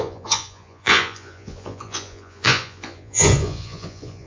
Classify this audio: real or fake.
fake